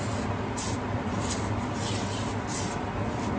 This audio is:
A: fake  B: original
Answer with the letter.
B